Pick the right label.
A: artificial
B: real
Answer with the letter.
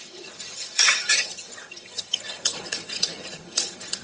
A